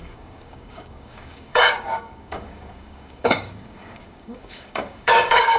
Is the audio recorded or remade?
remade